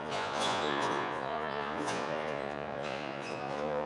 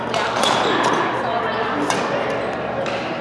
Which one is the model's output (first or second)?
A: first